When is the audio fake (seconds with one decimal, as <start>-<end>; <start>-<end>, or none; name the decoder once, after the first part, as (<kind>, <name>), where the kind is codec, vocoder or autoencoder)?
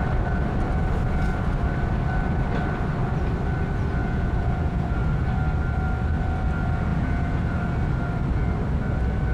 4.0-5.1 (vocoder, Vocos); 6.9-7.9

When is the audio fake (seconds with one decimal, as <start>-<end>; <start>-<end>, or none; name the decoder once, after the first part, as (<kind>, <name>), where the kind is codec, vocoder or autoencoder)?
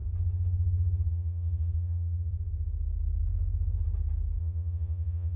1.1-2.3 (vocoder, Vocos); 4.4-5.4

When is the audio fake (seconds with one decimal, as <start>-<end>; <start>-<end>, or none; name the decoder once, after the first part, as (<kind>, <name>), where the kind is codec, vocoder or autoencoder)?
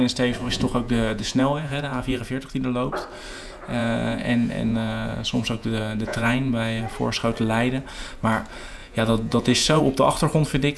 0.4-2.2 (vocoder, Vocos); 3.8-6.8; 8.8-9.8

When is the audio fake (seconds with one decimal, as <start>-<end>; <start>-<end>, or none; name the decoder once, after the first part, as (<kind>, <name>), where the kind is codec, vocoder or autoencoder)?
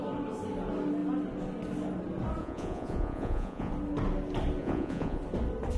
2.4-3.7 (vocoder, Vocos); 4.6-5.2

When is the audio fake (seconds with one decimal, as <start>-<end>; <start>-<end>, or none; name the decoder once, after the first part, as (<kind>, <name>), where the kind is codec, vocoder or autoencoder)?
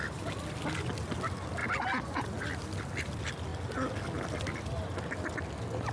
none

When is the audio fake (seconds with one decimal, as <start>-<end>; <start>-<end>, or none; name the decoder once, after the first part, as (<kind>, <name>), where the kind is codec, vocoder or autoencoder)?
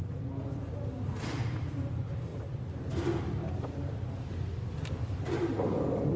none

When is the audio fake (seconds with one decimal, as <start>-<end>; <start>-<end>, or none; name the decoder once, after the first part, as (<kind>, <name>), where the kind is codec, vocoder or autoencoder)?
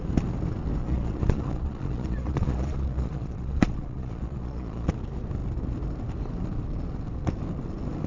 0.8-4.9 (vocoder, Vocos)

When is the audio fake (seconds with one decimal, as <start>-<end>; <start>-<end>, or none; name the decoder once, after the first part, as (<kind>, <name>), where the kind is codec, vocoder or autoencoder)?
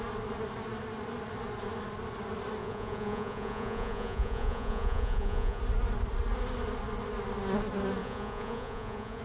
2.6-5.6 (vocoder, Vocos); 8.0-9.2